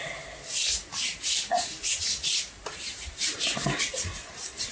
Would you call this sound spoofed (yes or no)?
no